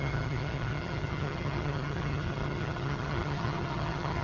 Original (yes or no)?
no